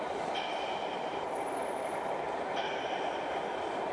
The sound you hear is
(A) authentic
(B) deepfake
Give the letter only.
A